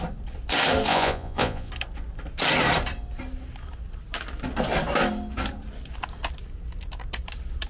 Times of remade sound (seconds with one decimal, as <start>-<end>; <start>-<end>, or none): 0.9-1.7